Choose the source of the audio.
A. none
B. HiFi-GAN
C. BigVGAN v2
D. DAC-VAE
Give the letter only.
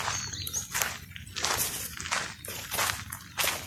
A